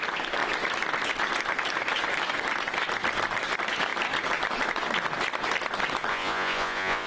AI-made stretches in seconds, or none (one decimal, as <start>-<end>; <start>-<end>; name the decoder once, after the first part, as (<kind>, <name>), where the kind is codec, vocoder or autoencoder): 6.1-7.1 (vocoder, Vocos)